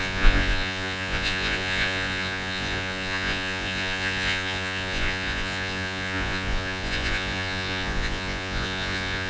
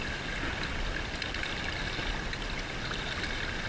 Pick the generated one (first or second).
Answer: first